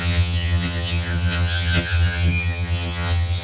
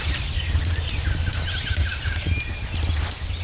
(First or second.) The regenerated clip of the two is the first